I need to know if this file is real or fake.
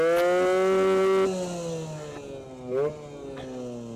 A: real